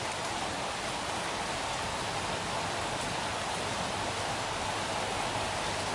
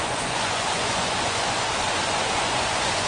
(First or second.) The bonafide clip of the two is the first